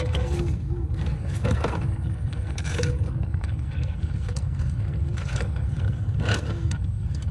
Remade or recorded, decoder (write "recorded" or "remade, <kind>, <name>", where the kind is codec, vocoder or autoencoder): remade, codec, SNAC